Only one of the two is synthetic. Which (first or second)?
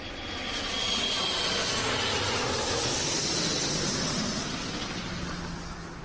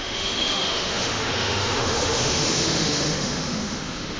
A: second